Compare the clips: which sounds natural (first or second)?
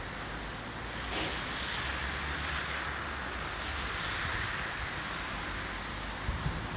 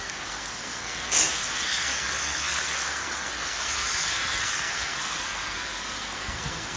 first